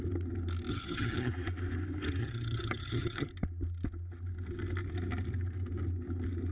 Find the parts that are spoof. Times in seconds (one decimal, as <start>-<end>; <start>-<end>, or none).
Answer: 0.7-1.3; 2.2-3.3